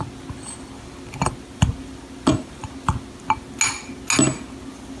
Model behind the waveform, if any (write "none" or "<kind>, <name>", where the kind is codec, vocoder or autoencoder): none